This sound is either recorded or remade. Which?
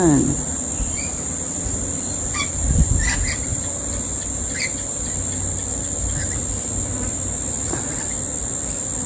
remade